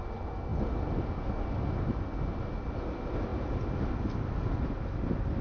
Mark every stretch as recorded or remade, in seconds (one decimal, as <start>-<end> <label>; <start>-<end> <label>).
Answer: 0.0-5.4 recorded